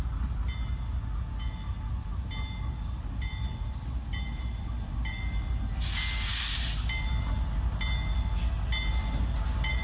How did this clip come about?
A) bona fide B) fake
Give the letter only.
A